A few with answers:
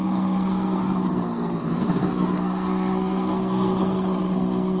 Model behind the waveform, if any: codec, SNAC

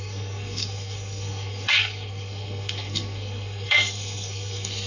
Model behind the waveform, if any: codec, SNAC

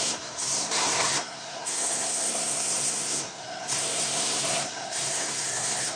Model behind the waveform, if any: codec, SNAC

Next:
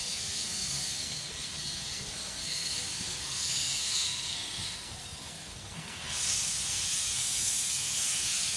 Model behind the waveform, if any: codec, SNAC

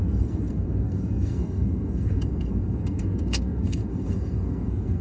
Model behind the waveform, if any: codec, SNAC